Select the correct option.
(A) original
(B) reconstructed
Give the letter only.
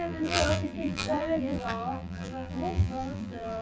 B